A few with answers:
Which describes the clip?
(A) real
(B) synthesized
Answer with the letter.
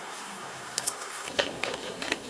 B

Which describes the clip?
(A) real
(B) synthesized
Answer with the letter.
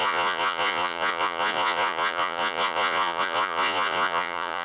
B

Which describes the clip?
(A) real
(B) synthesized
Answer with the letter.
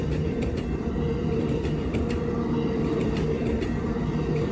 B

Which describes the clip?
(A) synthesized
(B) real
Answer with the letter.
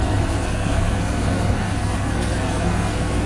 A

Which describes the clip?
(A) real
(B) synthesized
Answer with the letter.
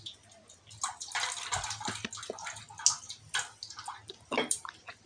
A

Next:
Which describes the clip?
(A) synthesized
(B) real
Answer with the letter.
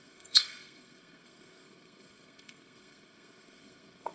A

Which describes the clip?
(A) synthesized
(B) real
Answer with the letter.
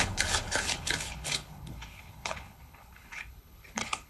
A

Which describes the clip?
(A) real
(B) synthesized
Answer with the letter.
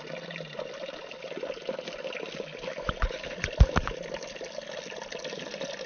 A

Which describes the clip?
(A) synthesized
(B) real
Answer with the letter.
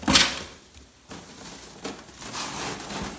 B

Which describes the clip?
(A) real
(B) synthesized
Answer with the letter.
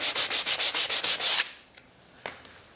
A